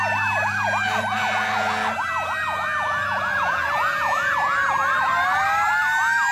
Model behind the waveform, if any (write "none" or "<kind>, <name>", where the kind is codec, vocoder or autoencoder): none